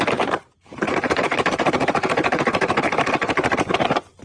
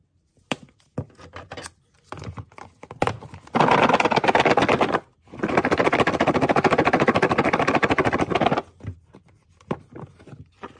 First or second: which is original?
second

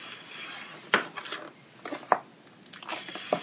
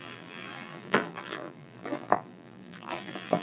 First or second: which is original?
first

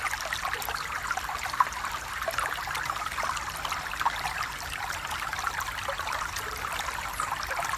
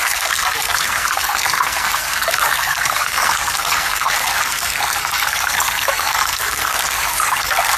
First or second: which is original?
first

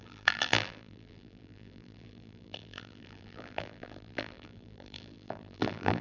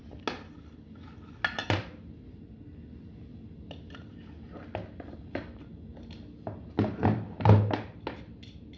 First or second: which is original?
second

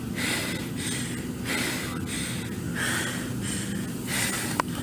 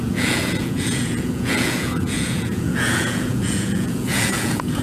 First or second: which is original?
first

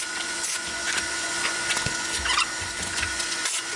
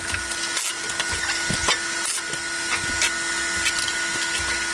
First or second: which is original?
second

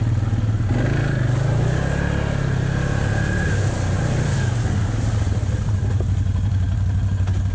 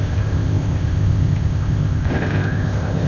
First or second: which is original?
first